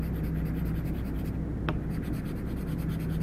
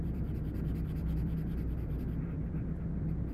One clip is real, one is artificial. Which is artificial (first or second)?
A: second